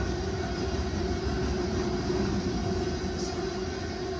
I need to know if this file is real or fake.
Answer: real